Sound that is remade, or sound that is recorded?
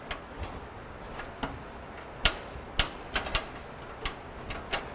recorded